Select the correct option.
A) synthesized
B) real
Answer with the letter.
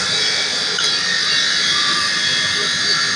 B